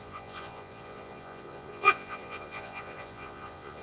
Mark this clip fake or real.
fake